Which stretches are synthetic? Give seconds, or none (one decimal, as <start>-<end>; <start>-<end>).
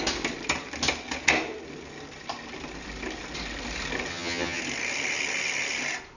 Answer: 4.1-4.6